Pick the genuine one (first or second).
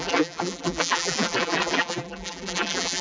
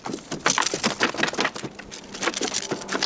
second